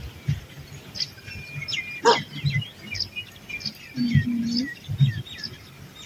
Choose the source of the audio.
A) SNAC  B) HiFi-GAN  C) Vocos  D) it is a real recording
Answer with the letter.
D